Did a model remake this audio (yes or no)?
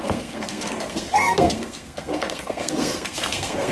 yes